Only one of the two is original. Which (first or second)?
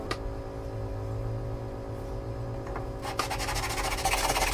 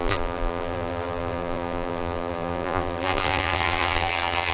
first